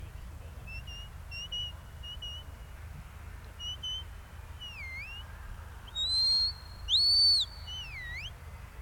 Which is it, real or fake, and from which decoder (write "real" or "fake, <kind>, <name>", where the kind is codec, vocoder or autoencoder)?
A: real